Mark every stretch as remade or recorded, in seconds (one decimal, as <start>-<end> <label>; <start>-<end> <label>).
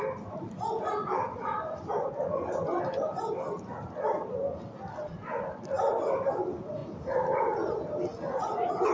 0.0-8.9 recorded